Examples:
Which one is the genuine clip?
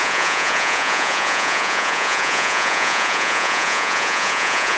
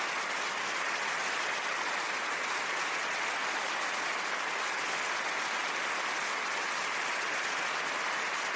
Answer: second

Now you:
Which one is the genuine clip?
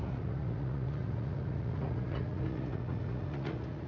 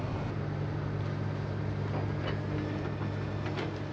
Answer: second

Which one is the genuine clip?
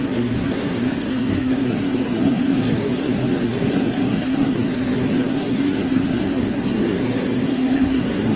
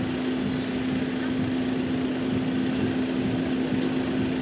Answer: second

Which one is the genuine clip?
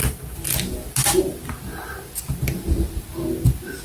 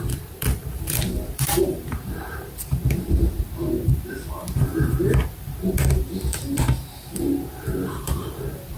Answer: first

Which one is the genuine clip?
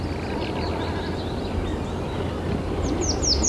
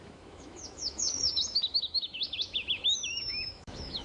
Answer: first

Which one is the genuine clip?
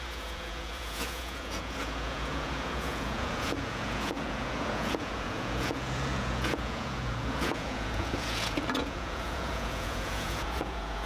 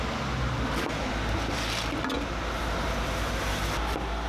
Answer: second